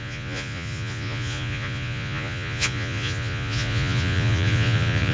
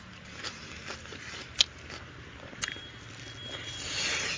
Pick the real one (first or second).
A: second